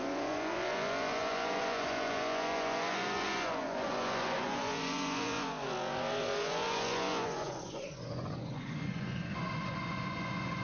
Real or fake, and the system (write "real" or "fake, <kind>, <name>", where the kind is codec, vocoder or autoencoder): fake, vocoder, Vocos